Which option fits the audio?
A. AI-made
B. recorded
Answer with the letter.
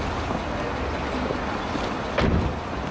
B